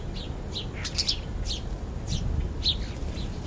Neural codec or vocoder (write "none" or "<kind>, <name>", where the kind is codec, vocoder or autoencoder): none